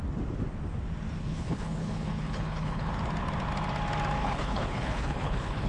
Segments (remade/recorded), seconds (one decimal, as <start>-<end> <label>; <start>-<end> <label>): 0.0-1.2 recorded; 1.2-2.9 remade; 2.9-4.2 recorded; 4.2-5.7 remade